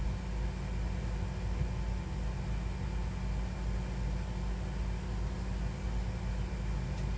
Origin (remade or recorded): recorded